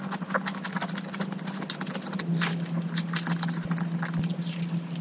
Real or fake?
real